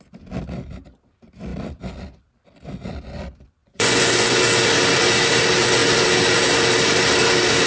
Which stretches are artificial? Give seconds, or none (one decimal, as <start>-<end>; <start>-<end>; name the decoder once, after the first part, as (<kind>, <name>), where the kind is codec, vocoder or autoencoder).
3.6-4.4 (vocoder, Vocos)